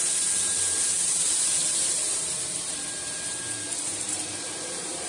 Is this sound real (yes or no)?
no